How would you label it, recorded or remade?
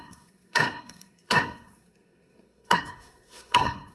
remade